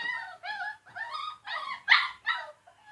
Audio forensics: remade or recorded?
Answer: recorded